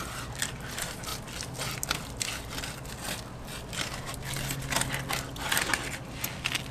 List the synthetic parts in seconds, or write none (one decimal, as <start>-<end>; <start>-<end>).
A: none